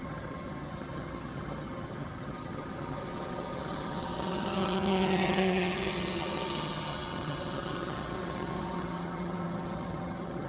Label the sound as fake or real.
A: fake